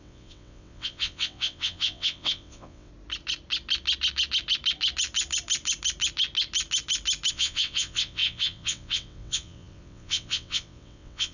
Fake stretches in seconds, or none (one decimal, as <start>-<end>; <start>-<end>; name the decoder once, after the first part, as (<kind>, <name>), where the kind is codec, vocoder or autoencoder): 0.0-2.9 (vocoder, WaveNeXt); 7.3-11.3